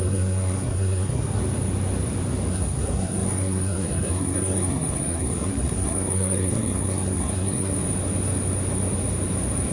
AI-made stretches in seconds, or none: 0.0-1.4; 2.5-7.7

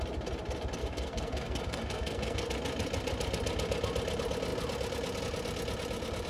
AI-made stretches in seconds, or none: 0.8-2.5